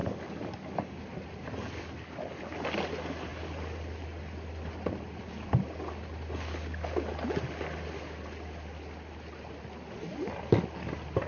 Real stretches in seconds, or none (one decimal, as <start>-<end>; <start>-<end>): 1.0-11.3